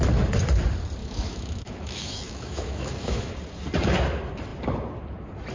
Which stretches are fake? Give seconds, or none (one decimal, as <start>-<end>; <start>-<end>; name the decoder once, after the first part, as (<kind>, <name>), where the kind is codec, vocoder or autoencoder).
1.0-3.3 (autoencoder, DAC-VAE)